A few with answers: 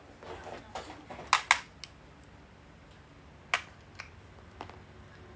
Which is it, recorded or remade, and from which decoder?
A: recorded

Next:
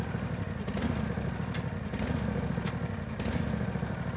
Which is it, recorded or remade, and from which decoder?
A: recorded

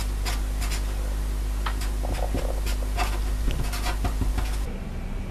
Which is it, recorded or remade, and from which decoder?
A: recorded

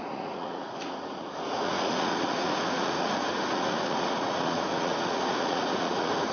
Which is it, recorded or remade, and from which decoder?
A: remade, vocoder, Vocos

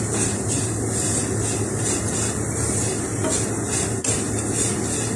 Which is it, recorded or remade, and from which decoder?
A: recorded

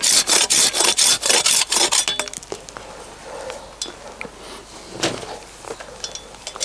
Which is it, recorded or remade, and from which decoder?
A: recorded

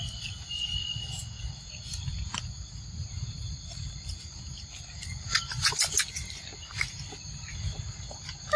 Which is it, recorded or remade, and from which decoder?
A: recorded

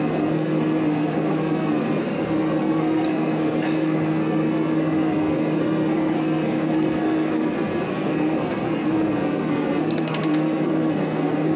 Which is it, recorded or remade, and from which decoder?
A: remade, codec, SNAC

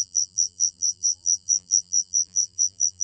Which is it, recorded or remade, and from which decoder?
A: remade, vocoder, BigVGAN v2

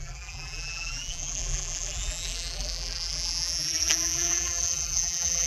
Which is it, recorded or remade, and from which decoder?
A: remade, vocoder, BigVGAN v2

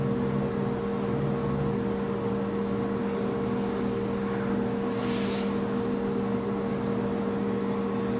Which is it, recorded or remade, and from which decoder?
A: recorded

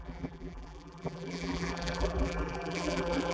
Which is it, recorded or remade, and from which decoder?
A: remade, vocoder, BigVGAN v2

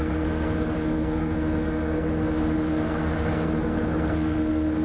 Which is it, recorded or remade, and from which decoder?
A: remade, codec, SNAC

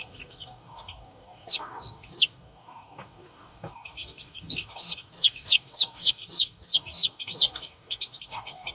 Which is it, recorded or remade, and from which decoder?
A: remade, codec, DAC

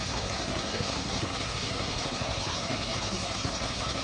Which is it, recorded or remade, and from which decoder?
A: remade, codec, SNAC